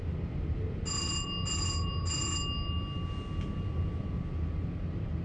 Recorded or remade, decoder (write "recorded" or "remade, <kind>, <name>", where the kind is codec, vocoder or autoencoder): recorded